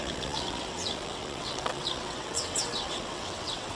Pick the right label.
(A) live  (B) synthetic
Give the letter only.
B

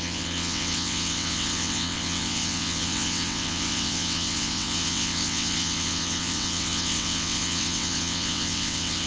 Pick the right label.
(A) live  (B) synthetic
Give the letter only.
B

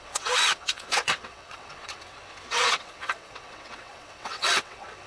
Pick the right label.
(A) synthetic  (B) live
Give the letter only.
A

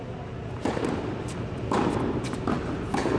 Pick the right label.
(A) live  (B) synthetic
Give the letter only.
A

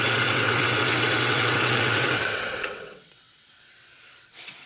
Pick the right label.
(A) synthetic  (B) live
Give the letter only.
A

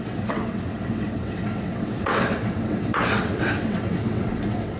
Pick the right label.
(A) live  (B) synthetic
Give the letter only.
B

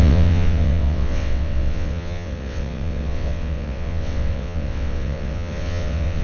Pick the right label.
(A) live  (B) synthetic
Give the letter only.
B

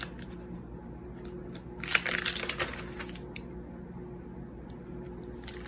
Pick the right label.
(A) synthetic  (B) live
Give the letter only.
B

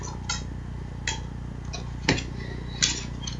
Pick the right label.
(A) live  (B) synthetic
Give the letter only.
A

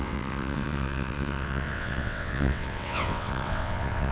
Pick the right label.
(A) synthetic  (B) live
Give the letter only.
A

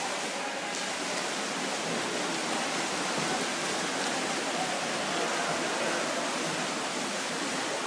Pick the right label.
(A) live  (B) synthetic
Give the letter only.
A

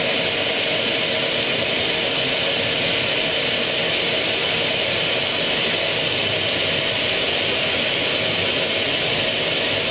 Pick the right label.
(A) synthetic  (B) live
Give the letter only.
B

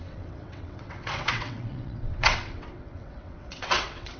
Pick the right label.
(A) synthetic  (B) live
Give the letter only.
A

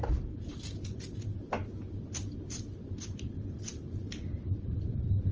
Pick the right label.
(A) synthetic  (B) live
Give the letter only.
B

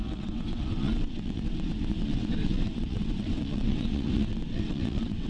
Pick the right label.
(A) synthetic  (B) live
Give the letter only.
A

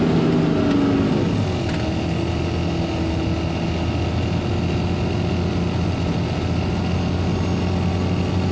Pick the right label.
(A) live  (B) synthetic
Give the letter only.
A